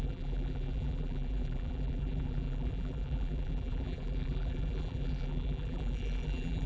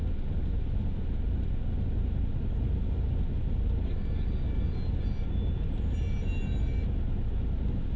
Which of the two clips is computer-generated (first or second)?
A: first